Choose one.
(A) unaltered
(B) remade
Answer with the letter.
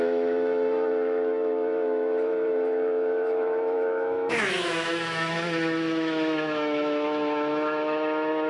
B